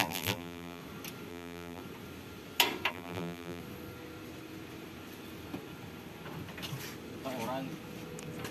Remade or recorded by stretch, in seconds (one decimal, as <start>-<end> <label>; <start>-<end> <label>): 0.0-0.8 remade; 0.8-1.3 recorded; 1.3-1.8 remade; 1.8-2.9 recorded; 2.9-3.6 remade; 3.6-8.5 recorded